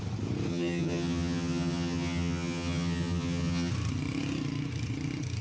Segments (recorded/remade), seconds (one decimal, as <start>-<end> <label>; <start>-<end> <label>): 0.0-0.5 recorded; 0.5-3.7 remade; 3.7-5.4 recorded